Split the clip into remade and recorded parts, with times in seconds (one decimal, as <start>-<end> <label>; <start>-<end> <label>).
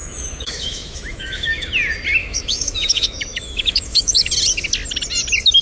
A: 0.0-1.7 remade; 1.7-2.2 recorded; 2.2-4.3 remade; 4.3-5.6 recorded